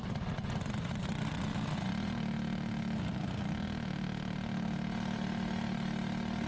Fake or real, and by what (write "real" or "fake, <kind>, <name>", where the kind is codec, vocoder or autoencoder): real